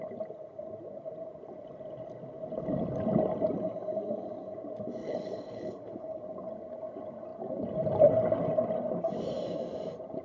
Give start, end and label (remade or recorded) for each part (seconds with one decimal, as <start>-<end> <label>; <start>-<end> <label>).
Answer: 0.0-5.0 recorded; 5.0-6.2 remade; 6.2-10.2 recorded